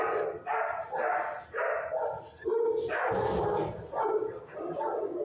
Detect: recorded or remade recorded